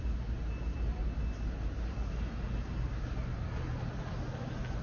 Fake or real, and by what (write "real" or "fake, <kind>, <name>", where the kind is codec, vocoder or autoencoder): real